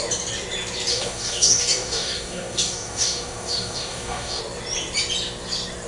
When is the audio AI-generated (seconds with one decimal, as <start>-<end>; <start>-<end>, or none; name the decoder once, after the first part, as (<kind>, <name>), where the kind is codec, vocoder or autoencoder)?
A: 0.9-4.4 (codec, DAC)

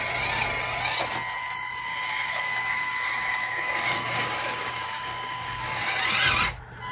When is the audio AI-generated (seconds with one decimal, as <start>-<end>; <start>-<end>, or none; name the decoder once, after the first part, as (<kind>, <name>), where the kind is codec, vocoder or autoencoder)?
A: 1.7-5.8 (codec, DAC)

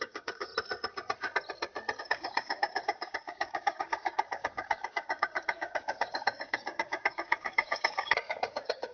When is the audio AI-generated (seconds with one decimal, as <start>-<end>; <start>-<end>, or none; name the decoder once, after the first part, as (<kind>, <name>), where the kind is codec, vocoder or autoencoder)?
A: 0.0-0.5 (codec, DAC); 2.0-8.9

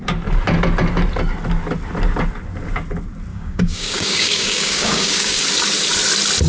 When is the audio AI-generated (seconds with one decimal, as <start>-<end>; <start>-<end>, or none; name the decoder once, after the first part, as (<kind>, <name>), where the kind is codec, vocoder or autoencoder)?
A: 3.3-5.4 (codec, DAC)

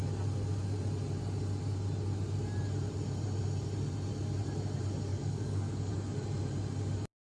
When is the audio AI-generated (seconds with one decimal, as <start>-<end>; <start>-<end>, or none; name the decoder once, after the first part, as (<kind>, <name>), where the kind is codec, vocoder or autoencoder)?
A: 5.1-5.9 (codec, DAC)

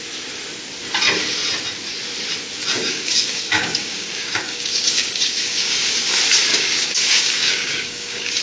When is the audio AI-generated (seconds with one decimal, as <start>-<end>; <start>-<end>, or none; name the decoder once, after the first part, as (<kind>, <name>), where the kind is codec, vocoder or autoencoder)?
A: 2.6-5.9 (codec, DAC); 6.5-8.4

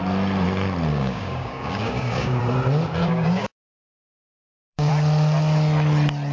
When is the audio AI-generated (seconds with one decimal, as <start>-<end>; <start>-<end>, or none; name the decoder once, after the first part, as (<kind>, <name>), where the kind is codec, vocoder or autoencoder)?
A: 0.9-2.4 (codec, DAC); 3.0-4.9